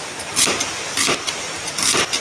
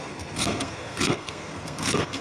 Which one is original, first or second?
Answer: first